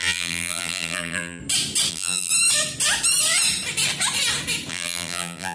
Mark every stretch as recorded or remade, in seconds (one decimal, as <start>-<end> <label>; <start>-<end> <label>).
0.0-1.4 remade; 1.4-1.9 recorded; 1.9-2.3 remade; 2.3-4.7 recorded; 4.7-5.5 remade

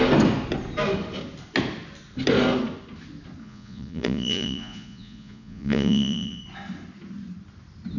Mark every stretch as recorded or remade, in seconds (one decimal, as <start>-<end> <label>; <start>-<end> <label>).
0.0-3.4 recorded; 3.4-6.4 remade; 6.4-8.0 recorded

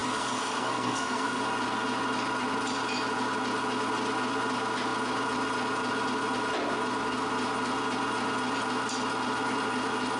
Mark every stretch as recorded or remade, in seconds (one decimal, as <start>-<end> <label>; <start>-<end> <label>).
0.0-1.4 remade; 1.4-10.2 recorded

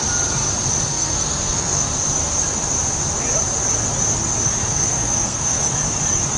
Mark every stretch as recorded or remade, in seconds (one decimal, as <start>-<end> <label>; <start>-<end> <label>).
0.0-0.9 recorded; 0.9-1.9 remade; 1.9-4.7 recorded; 4.7-5.7 remade; 5.7-6.4 recorded

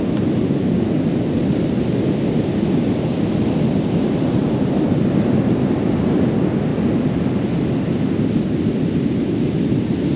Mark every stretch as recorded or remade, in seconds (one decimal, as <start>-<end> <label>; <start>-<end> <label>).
0.0-10.2 recorded

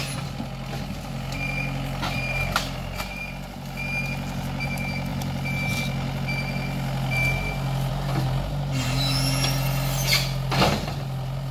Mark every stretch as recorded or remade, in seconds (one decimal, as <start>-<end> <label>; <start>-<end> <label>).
0.0-11.5 recorded

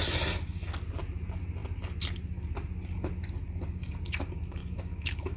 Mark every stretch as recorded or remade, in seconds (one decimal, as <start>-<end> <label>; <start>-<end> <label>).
0.0-4.6 recorded; 4.6-5.4 remade